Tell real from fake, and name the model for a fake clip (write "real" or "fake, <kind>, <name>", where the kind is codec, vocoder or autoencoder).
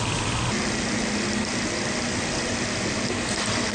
real